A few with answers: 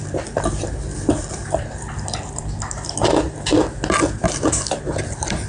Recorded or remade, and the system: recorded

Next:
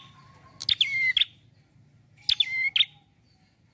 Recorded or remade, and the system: recorded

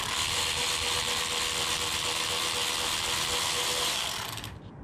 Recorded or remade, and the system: recorded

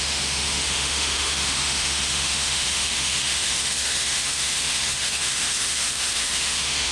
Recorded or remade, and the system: remade, autoencoder, DAC-VAE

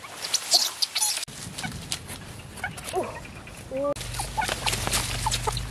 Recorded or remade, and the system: recorded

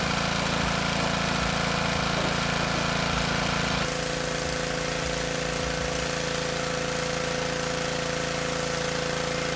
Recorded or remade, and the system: recorded